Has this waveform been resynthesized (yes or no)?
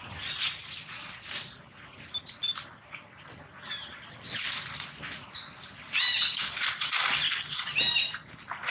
no